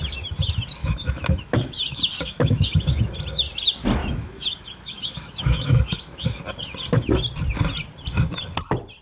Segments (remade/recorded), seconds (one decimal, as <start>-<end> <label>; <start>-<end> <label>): 0.0-0.8 recorded; 0.8-3.0 remade; 3.0-4.0 recorded; 4.0-6.4 remade; 6.4-9.0 recorded